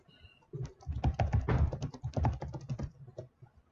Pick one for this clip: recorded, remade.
recorded